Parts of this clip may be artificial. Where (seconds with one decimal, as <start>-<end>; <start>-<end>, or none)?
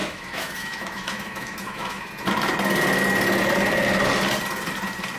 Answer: 0.0-2.1